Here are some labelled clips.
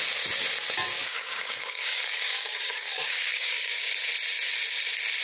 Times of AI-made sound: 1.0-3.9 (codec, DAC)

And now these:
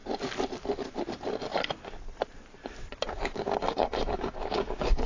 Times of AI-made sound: 3.1-5.1 (codec, DAC)

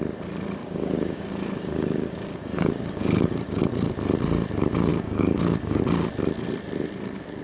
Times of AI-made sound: 0.6-3.6 (codec, DAC); 4.9-5.8

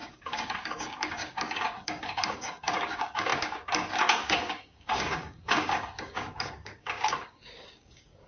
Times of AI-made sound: 0.0-8.3 (codec, DAC)